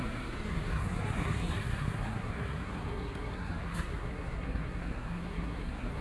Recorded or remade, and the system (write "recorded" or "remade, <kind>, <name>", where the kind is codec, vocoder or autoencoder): remade, codec, SNAC